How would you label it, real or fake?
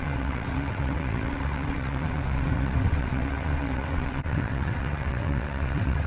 fake